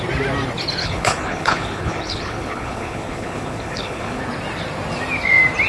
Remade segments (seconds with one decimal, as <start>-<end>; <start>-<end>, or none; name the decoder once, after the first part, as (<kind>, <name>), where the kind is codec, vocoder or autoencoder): 0.8-4.2 (codec, HILCodec)